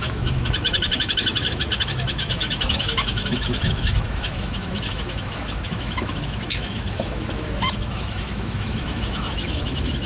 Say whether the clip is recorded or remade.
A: remade